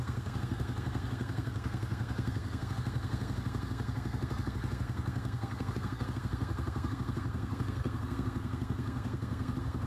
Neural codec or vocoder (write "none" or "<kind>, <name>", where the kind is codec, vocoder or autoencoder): codec, SNAC